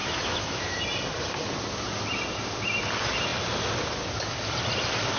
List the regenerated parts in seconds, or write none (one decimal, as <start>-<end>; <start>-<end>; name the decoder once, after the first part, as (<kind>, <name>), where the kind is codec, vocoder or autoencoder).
0.0-0.8 (autoencoder, DAC-VAE)